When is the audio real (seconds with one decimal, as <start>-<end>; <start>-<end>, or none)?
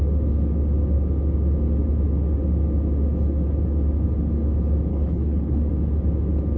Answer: 0.0-4.9; 5.7-6.6